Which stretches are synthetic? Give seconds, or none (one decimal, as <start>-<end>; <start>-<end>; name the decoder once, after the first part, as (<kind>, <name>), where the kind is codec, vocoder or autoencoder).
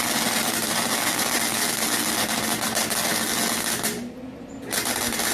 none